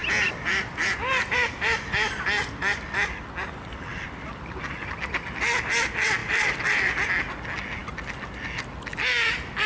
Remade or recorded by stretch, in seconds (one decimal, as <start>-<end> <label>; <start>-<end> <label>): 0.0-1.8 remade; 1.8-3.9 recorded; 3.9-4.6 remade; 4.6-6.2 recorded; 6.2-7.1 remade; 7.1-9.7 recorded